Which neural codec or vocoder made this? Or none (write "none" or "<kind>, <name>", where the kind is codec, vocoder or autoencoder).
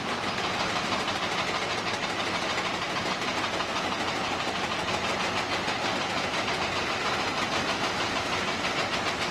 none